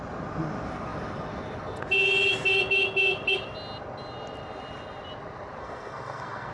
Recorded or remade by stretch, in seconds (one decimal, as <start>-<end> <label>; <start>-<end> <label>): 0.0-5.6 recorded; 5.6-6.5 remade